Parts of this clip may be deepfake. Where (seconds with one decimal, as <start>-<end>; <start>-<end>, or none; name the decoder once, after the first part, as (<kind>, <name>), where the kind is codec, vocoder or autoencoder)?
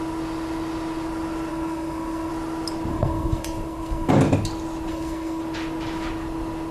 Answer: 1.5-2.3 (codec, SNAC); 2.9-4.1; 4.9-5.4